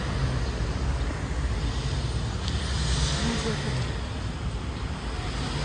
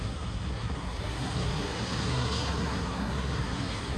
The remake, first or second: second